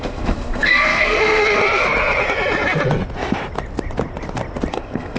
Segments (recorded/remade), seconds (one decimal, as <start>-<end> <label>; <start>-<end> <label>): 0.0-1.6 remade; 1.6-4.7 recorded; 4.7-5.2 remade